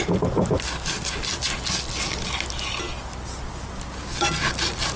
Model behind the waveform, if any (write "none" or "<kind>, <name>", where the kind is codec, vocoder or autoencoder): none